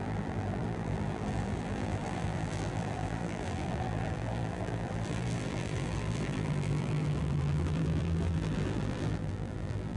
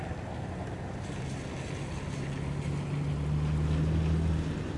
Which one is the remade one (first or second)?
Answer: first